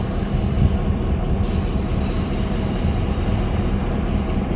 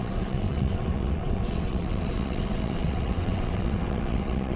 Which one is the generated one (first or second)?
second